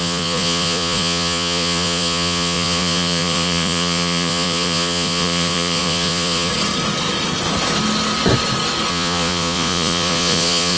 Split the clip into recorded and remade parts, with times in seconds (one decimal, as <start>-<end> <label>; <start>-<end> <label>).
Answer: 0.0-6.5 remade; 6.5-8.9 recorded; 8.9-10.8 remade